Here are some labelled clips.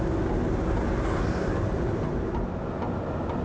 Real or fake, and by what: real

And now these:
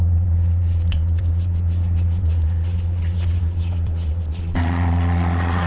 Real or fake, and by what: fake, vocoder, Vocos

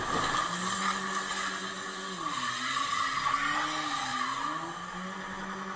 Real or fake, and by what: real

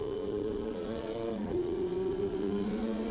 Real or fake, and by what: fake, vocoder, Vocos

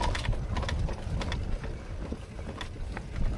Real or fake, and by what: real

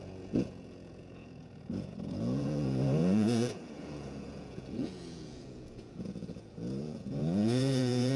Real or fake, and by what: fake, vocoder, Vocos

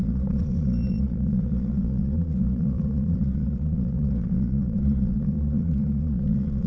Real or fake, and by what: fake, vocoder, Vocos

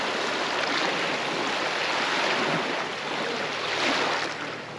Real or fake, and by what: real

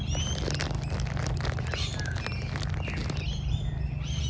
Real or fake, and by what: real